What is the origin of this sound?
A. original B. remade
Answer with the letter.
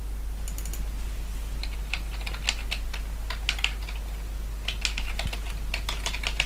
A